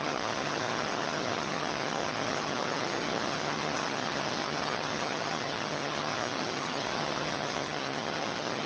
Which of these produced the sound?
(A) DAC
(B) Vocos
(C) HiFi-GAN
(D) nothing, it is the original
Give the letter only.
C